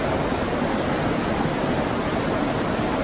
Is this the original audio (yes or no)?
yes